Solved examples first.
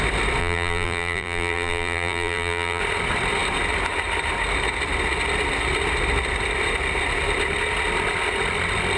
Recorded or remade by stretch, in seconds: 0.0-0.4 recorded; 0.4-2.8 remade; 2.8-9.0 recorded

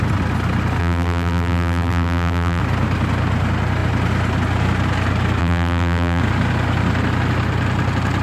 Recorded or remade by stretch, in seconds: 0.0-0.8 recorded; 0.8-2.6 remade; 2.6-5.4 recorded; 5.4-6.2 remade; 6.2-8.2 recorded